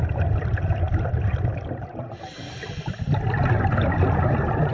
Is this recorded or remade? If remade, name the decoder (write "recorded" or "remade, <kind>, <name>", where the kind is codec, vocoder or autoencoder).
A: recorded